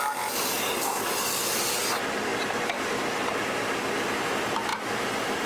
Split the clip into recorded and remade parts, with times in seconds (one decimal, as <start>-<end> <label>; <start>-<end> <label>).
0.0-4.7 recorded; 4.7-5.5 remade